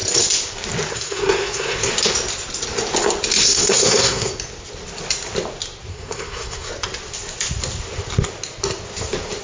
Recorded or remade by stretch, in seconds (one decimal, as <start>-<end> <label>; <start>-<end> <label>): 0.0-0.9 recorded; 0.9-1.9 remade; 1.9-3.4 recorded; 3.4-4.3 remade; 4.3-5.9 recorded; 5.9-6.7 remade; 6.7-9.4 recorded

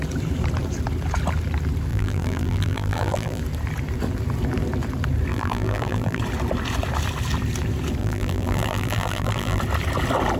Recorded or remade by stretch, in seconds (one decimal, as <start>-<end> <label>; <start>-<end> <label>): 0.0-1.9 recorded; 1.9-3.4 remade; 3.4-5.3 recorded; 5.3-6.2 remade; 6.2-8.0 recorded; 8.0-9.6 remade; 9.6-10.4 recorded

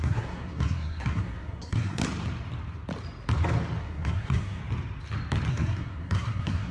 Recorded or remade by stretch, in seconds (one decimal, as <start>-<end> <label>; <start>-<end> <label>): 0.0-2.0 remade; 2.0-3.8 recorded; 3.8-4.6 remade; 4.6-5.5 recorded; 5.5-6.7 remade